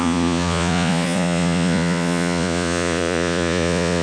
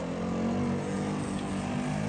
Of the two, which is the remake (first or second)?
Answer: first